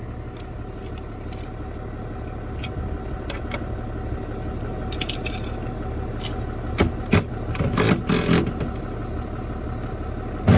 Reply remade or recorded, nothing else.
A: recorded